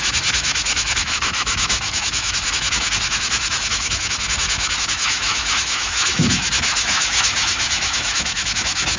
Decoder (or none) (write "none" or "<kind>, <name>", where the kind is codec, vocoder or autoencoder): autoencoder, DAC-VAE